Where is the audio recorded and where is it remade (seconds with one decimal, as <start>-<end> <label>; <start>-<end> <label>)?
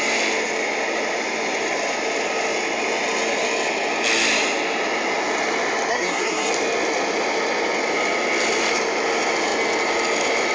0.0-5.9 recorded; 5.9-6.5 remade; 6.5-10.5 recorded